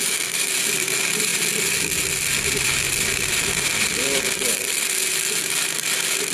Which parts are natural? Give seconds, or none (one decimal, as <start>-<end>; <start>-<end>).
none